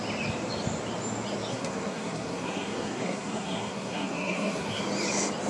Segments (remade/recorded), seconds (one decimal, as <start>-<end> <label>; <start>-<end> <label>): 0.0-1.5 recorded; 1.5-4.8 remade; 4.8-5.5 recorded